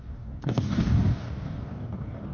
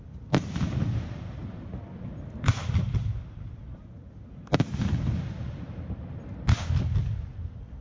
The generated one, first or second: first